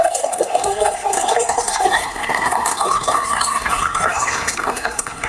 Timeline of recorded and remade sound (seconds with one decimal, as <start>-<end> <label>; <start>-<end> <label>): 0.0-5.3 remade